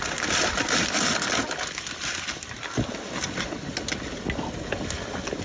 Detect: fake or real real